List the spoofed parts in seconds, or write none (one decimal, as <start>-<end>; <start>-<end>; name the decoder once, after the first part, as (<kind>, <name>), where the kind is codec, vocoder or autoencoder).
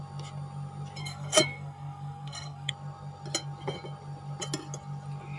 1.0-2.7 (codec, SNAC)